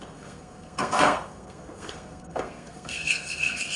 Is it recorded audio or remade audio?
remade